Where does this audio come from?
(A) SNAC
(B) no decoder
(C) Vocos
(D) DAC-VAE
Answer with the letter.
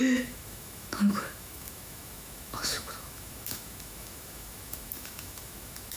D